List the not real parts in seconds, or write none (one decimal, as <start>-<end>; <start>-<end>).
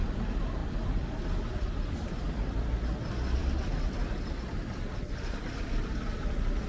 none